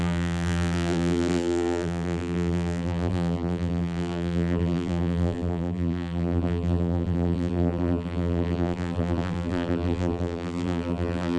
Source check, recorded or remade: remade